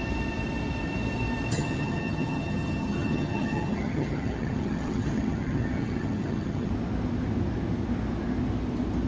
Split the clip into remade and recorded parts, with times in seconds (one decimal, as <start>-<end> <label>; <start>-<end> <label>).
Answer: 0.0-1.5 recorded; 1.5-6.7 remade; 6.7-9.1 recorded